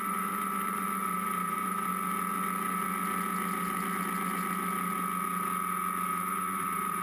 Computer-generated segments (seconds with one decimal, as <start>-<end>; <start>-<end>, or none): 0.0-1.9; 6.1-7.0